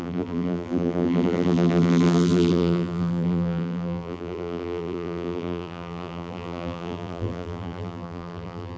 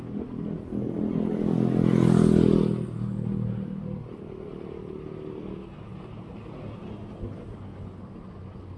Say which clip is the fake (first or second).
first